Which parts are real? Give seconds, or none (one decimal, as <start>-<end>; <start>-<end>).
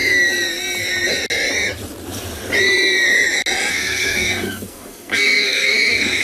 0.0-3.7